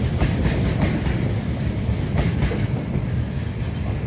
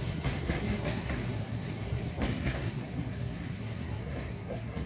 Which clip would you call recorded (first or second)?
first